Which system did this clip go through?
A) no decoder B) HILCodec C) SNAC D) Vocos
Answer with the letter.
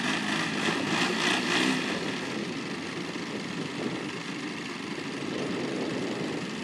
A